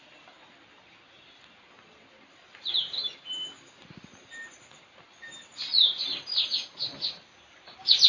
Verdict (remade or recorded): recorded